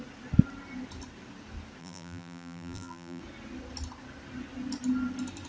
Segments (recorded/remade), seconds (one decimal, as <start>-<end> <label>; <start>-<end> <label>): 0.0-1.8 recorded; 1.8-3.2 remade; 3.2-5.5 recorded